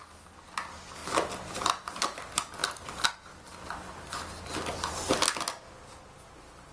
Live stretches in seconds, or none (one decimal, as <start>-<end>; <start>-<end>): 0.0-6.7